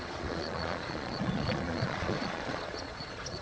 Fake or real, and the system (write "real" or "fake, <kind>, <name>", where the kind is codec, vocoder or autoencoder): fake, vocoder, Vocos